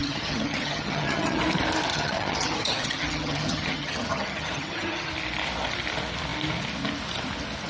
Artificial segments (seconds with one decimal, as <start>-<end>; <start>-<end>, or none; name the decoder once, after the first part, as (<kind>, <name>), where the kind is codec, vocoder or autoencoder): 0.0-1.4 (vocoder, HiFi-GAN); 1.9-5.1